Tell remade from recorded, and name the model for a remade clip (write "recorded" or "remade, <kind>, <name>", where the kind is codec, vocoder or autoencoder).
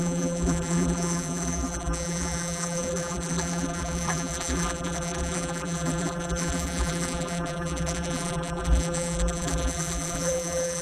remade, vocoder, BigVGAN v2